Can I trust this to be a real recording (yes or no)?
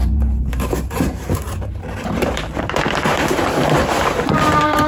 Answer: no